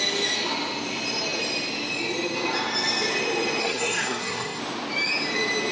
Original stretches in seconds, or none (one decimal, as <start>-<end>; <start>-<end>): 0.0-3.6; 4.6-5.7